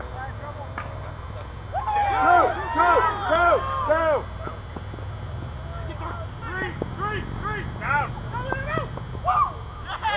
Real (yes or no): yes